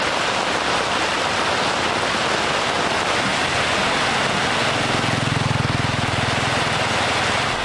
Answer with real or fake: real